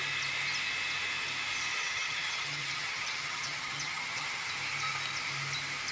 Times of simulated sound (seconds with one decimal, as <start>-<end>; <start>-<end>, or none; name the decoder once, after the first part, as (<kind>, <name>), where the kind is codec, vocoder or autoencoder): 1.7-4.5 (vocoder, HiFi-GAN)